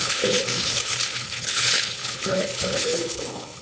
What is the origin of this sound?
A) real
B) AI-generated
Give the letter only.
B